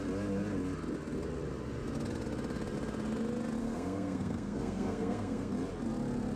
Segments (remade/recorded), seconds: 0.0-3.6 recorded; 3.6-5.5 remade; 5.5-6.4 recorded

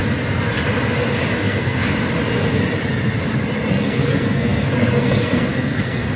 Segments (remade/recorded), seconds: 0.0-1.3 recorded; 1.3-1.8 remade; 1.8-3.7 recorded; 3.7-6.2 remade

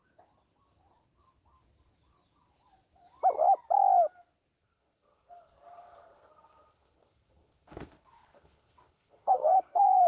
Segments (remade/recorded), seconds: 0.0-4.6 recorded; 4.6-10.1 remade